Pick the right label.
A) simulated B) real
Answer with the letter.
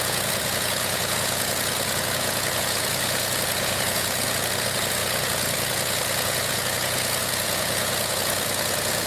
A